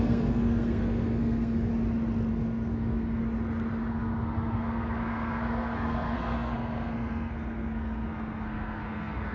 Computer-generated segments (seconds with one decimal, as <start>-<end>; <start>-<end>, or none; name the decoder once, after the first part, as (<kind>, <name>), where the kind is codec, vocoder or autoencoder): 0.0-1.7 (codec, SNAC); 2.3-3.2; 3.9-9.3